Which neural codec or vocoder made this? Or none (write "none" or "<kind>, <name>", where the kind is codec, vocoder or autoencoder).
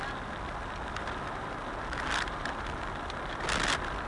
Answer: none